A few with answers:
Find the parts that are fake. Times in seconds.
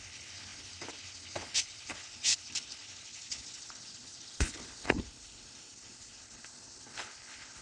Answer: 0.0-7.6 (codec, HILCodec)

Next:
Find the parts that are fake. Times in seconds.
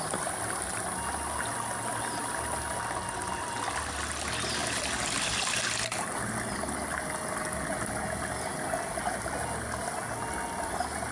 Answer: none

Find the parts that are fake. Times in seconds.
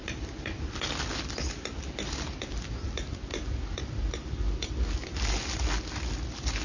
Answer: none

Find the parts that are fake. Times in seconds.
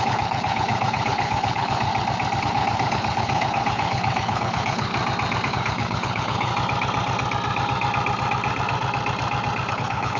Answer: 0.0-1.9 (codec, HILCodec); 2.4-4.9; 5.5-6.5; 9.7-10.2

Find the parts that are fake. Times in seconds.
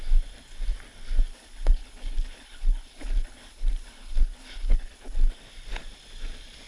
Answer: 1.3-5.3 (codec, HILCodec)